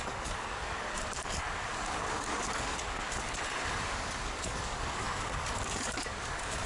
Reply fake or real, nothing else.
fake